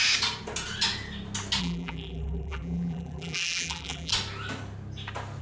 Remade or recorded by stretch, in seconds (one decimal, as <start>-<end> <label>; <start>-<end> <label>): 0.0-1.6 recorded; 1.6-4.1 remade; 4.1-5.4 recorded